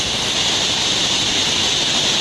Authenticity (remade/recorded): recorded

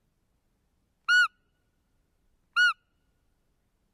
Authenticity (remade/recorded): recorded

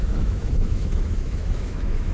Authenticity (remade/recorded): remade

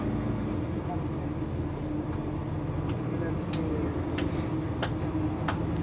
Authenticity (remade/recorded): recorded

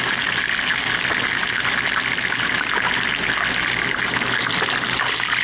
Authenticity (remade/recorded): recorded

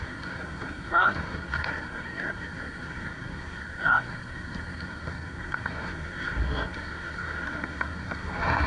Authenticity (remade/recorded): remade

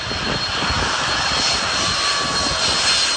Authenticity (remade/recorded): recorded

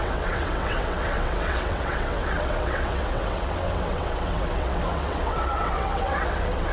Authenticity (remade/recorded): remade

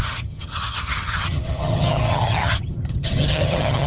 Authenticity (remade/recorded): remade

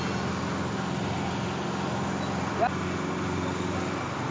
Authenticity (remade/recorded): recorded